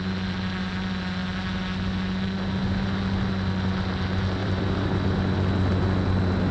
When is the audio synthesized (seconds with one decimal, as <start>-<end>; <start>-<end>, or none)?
4.4-5.2

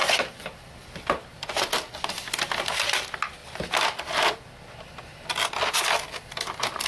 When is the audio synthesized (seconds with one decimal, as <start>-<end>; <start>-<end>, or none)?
0.0-2.6; 3.4-4.4

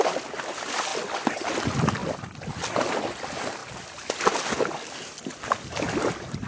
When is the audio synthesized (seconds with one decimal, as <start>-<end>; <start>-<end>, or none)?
0.9-1.5; 2.0-2.5; 3.6-4.3

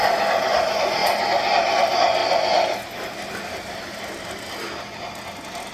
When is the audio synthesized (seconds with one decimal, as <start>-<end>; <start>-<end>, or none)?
none

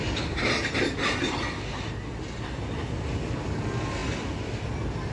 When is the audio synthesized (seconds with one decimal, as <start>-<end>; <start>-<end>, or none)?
none